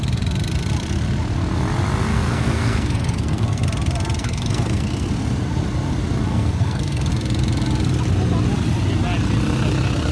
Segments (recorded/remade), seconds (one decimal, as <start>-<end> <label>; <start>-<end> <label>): 0.0-2.1 recorded; 2.1-3.6 remade; 3.6-4.2 recorded; 4.2-5.1 remade; 5.1-6.3 recorded; 6.3-7.1 remade; 7.1-10.1 recorded